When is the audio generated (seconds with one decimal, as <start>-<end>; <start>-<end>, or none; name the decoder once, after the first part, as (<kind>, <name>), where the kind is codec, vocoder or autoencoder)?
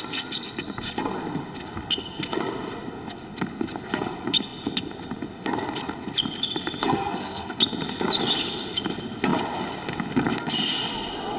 6.8-7.6 (codec, SNAC)